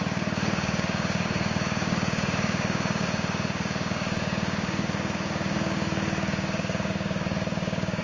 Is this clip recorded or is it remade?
remade